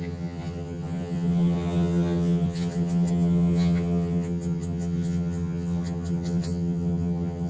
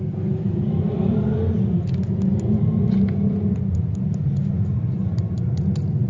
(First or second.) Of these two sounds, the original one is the second